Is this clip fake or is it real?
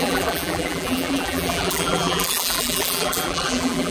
fake